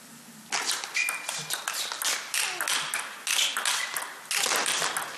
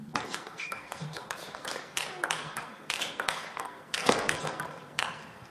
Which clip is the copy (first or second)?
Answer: second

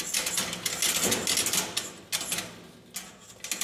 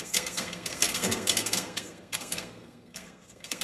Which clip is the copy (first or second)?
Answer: second